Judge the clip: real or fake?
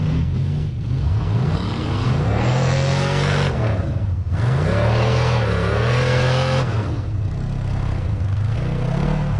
fake